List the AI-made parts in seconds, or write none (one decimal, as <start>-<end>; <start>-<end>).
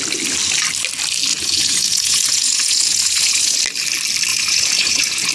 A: 1.3-3.6; 4.3-5.3